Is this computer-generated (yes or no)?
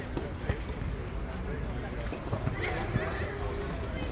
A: no